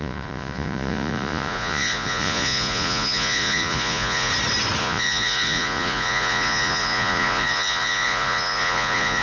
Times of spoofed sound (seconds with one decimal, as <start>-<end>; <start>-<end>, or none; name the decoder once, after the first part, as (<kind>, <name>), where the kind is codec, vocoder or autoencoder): 0.0-4.3 (vocoder, Vocos); 4.8-9.2